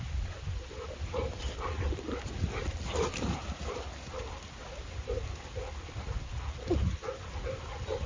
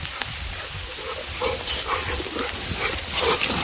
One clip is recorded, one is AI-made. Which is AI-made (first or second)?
first